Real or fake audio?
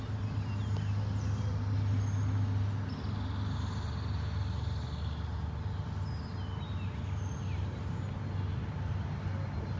real